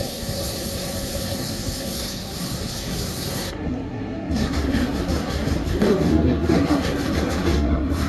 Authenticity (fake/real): fake